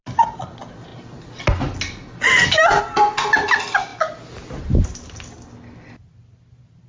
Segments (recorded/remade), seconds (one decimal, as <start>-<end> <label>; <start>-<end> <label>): 0.0-6.9 recorded